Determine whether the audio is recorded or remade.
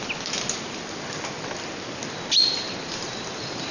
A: recorded